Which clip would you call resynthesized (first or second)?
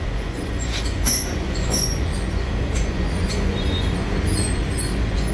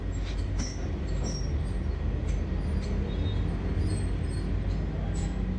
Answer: first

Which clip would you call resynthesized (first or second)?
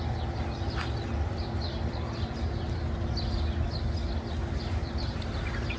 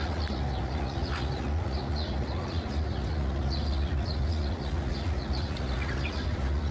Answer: second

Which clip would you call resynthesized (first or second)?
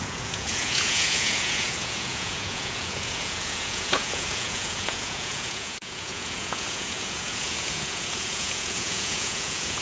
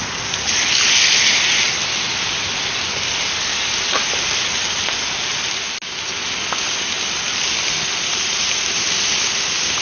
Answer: first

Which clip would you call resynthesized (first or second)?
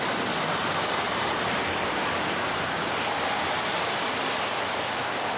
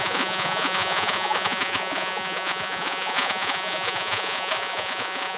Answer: second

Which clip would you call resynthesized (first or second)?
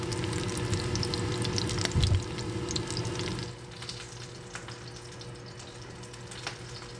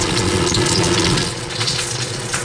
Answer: second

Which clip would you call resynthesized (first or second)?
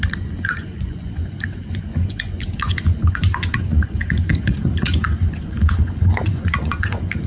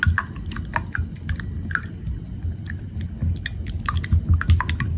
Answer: first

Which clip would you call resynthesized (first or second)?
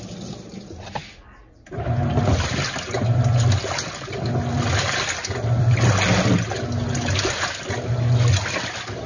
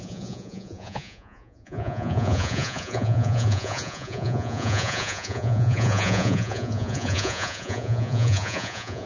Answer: second